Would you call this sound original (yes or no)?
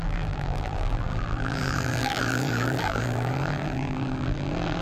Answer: no